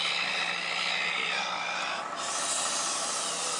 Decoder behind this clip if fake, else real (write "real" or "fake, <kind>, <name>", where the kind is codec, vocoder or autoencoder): real